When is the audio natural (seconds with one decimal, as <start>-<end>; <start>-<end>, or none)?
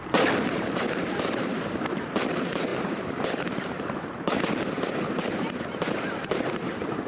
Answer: none